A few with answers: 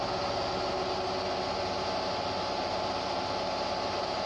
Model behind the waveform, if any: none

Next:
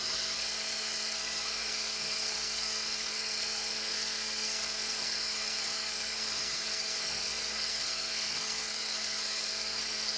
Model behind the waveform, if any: codec, SNAC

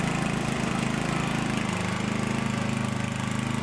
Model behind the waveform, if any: none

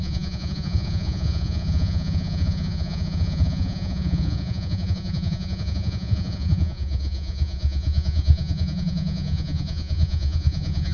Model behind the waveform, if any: vocoder, Vocos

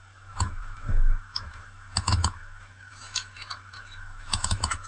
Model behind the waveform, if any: autoencoder, DAC-VAE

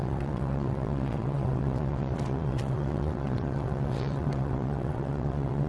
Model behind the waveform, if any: vocoder, WaveNeXt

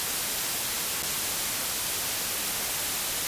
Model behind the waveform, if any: none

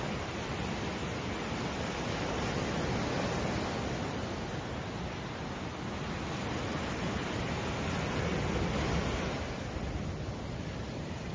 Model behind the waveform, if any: none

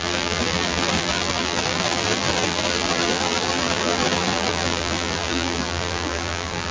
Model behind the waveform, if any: vocoder, BigVGAN v2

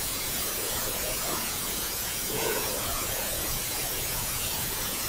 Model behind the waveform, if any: vocoder, Vocos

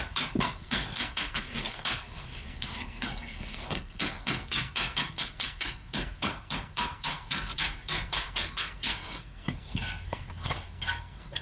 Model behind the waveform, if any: codec, SNAC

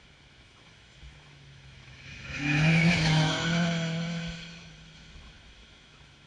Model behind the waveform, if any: autoencoder, DAC-VAE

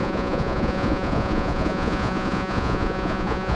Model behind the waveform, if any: vocoder, Vocos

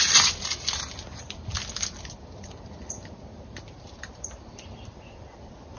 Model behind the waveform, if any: vocoder, BigVGAN v2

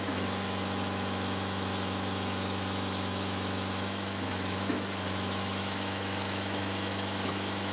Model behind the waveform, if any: autoencoder, DAC-VAE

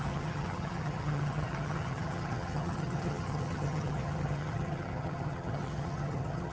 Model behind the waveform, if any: vocoder, HiFi-GAN